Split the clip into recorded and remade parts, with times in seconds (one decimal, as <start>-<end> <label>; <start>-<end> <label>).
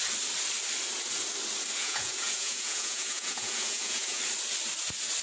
0.0-1.8 recorded; 1.8-4.2 remade; 4.2-5.2 recorded